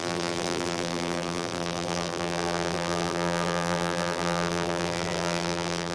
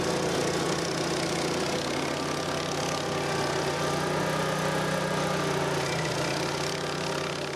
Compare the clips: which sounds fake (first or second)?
first